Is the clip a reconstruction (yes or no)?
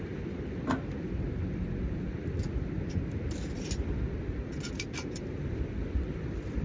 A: no